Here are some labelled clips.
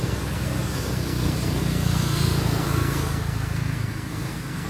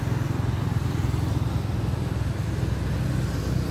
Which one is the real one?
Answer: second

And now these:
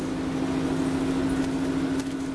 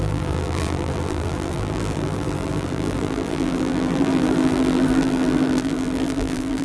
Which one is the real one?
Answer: first